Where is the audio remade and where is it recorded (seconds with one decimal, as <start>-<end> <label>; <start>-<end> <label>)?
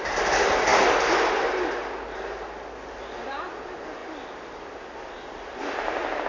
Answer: 0.0-6.3 recorded